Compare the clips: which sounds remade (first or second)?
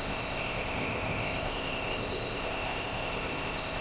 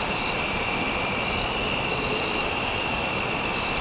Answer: first